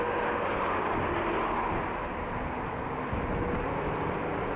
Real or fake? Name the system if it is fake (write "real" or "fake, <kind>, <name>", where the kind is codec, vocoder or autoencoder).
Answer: real